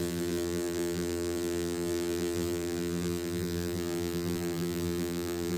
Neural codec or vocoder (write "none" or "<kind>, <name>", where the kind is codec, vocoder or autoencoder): vocoder, BigVGAN v2